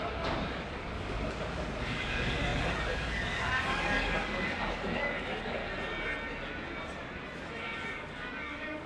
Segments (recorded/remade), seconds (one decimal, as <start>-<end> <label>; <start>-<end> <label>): 0.0-5.6 remade; 5.6-7.6 recorded; 7.6-8.9 remade